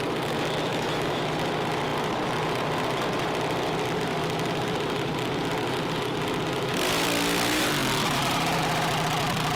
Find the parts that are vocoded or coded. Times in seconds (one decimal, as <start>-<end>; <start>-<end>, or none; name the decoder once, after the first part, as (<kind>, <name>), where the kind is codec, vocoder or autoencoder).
0.7-1.2 (autoencoder, DAC-VAE)